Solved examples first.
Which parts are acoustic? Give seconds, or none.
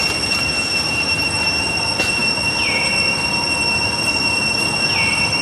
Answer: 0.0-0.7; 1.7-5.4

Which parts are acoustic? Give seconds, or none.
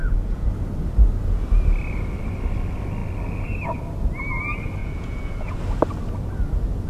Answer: 0.5-4.8; 5.6-6.9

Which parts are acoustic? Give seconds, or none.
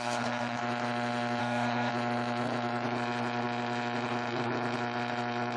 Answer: 0.6-1.4; 1.9-5.6